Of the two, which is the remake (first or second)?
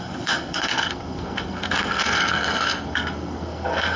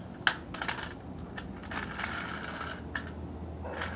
first